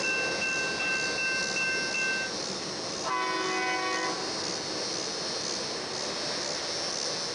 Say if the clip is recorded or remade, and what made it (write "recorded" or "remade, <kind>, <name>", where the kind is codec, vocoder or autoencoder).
recorded